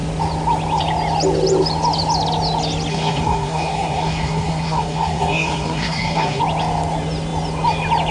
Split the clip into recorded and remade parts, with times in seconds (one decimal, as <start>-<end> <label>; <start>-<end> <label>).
0.0-2.9 recorded; 2.9-6.4 remade; 6.4-8.1 recorded